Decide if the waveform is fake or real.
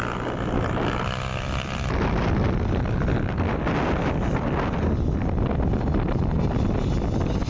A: real